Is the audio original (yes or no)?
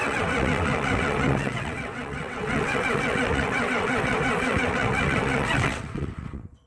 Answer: no